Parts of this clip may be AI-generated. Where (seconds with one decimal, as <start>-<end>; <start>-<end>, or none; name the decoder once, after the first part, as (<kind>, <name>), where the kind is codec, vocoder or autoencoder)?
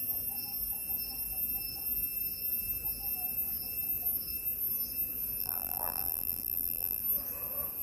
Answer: 5.4-7.0 (vocoder, BigVGAN v2)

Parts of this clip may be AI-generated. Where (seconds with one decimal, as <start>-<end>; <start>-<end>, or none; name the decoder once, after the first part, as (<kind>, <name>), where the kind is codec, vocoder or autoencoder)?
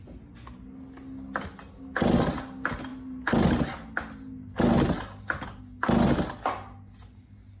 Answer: none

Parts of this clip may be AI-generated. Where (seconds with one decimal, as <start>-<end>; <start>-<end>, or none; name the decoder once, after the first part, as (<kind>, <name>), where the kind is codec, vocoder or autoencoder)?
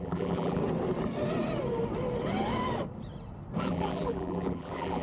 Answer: 0.0-0.6 (vocoder, BigVGAN v2); 3.6-5.0